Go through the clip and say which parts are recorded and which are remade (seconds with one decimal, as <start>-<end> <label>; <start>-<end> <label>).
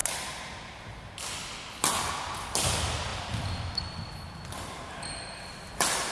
0.0-6.1 recorded